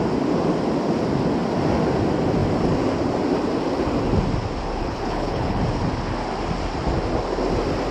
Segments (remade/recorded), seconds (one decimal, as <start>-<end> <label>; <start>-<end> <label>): 0.0-4.8 recorded; 4.8-5.6 remade; 5.6-7.9 recorded